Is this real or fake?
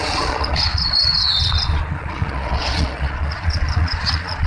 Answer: fake